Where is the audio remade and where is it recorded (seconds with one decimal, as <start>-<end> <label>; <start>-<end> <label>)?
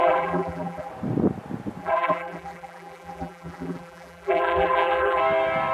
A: 0.0-0.9 remade; 0.9-1.8 recorded; 1.8-5.2 remade; 5.2-5.7 recorded